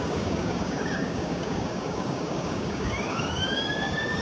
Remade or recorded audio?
remade